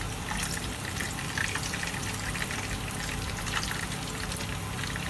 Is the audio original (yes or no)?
no